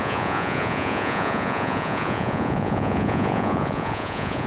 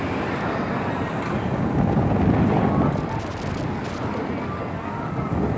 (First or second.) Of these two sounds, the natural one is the second